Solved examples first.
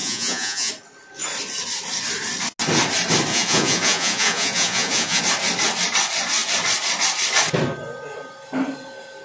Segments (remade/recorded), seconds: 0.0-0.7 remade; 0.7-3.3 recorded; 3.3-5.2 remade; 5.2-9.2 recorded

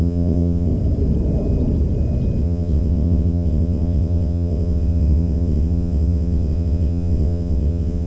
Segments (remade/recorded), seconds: 0.0-0.7 remade; 0.7-2.4 recorded; 2.4-8.1 remade